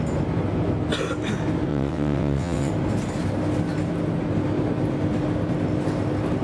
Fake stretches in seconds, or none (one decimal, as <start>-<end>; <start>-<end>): 1.7-2.7